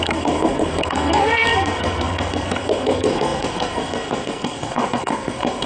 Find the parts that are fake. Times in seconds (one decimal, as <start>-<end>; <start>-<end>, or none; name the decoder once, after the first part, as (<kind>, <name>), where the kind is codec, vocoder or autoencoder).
0.0-5.7 (codec, SNAC)